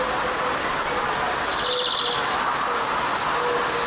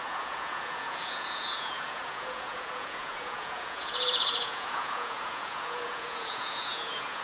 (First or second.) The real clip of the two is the first